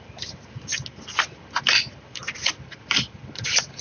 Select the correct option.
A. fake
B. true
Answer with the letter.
B